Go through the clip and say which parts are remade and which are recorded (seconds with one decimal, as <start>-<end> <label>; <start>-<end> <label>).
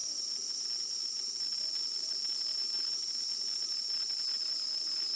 0.0-5.2 recorded